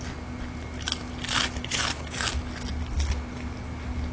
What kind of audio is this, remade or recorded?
recorded